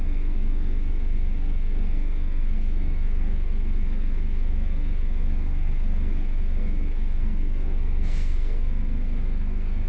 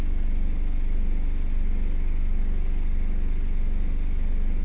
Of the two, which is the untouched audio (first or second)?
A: second